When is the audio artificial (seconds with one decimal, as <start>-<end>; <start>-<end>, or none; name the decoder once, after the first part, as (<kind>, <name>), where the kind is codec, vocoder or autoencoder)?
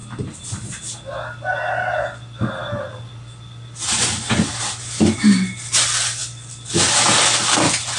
none